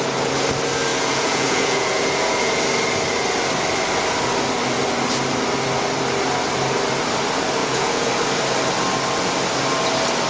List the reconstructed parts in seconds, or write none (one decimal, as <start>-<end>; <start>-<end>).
0.9-2.6; 7.6-8.1